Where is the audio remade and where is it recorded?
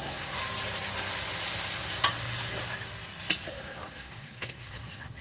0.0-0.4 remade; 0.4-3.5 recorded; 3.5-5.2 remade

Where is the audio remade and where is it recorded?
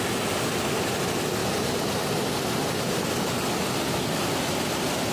0.0-5.1 recorded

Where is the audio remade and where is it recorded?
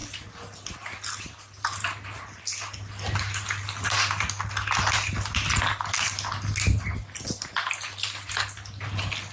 0.0-9.3 recorded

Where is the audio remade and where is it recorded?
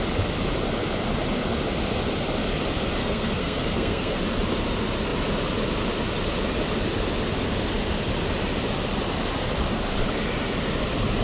0.0-3.0 recorded; 3.0-4.2 remade; 4.2-11.2 recorded